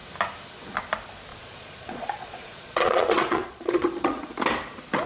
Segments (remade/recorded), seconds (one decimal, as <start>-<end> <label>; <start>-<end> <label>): 0.0-1.3 recorded; 1.3-4.4 remade; 4.4-5.1 recorded